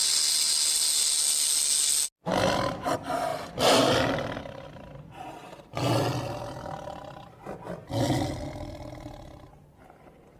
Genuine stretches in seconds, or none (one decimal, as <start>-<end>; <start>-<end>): 0.0-10.4